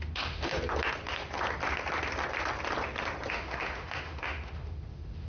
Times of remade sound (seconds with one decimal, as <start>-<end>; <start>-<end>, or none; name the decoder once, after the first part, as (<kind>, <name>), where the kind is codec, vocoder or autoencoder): 0.0-0.5 (autoencoder, DAC-VAE); 3.3-5.3